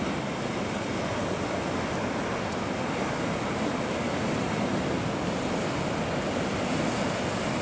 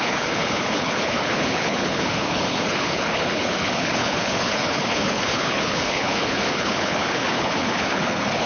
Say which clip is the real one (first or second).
first